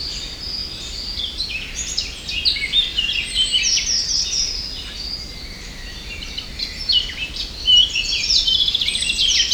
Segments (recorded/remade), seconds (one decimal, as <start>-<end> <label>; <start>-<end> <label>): 0.0-9.5 recorded